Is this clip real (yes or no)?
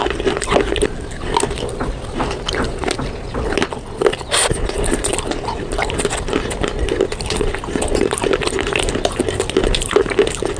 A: yes